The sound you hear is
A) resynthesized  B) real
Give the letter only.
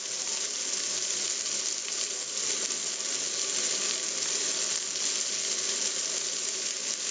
B